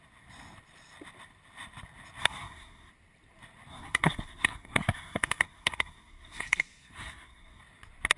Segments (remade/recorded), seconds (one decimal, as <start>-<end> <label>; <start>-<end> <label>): 0.0-2.2 recorded; 2.2-2.9 remade; 2.9-3.7 recorded; 3.7-7.6 remade; 7.6-8.2 recorded